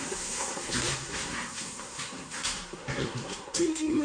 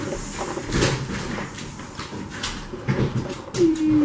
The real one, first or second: second